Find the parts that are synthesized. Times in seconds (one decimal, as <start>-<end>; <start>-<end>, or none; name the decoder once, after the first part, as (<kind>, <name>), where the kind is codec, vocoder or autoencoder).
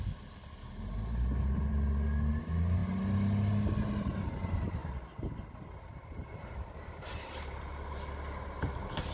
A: none